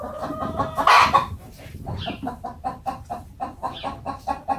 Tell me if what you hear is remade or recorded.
recorded